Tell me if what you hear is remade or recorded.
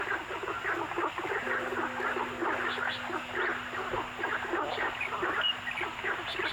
recorded